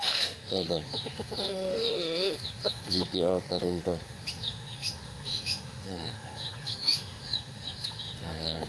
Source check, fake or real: fake